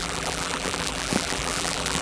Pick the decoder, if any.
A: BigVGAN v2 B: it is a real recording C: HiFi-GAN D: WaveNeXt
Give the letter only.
A